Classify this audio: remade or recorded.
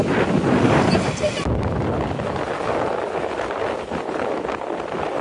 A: recorded